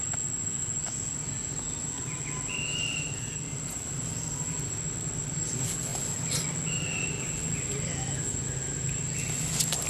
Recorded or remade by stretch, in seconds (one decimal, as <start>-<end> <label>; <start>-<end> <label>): 0.0-9.9 recorded